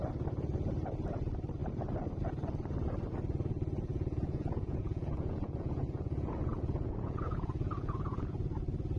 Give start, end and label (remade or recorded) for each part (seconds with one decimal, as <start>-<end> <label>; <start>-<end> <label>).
0.0-3.9 recorded; 3.9-8.4 remade; 8.4-9.0 recorded